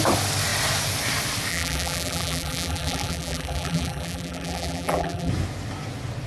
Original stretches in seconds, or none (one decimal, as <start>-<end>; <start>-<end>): 0.0-1.5; 5.3-6.3